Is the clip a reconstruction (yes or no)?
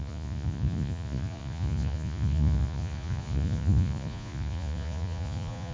yes